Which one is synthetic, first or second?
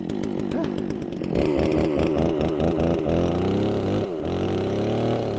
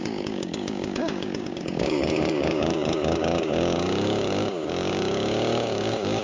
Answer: second